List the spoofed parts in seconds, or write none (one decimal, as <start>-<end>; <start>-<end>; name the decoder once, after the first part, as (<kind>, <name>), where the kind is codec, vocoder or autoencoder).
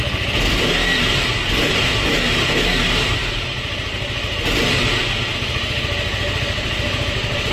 none